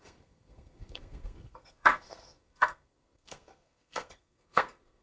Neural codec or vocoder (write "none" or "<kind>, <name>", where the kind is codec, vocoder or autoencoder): codec, SNAC